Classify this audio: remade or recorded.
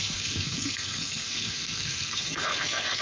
remade